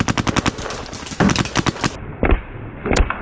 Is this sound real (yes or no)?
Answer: yes